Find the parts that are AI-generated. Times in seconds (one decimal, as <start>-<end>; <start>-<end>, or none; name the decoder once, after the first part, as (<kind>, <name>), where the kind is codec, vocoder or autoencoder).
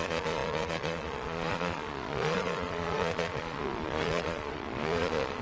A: 0.0-5.4 (vocoder, Vocos)